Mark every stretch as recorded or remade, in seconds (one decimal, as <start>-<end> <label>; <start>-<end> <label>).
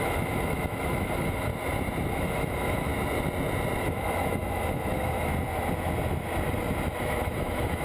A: 0.0-1.5 remade; 1.5-2.1 recorded; 2.1-2.9 remade; 2.9-3.8 recorded; 3.8-5.3 remade; 5.3-7.0 recorded; 7.0-7.8 remade